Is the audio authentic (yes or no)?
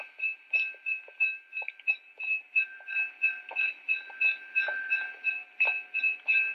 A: yes